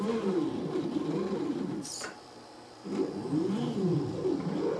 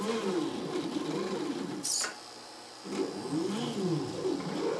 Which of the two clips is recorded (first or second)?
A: second